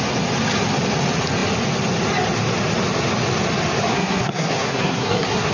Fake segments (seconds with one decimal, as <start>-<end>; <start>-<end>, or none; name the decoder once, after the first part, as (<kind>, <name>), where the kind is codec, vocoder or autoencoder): 3.9-5.5 (codec, SNAC)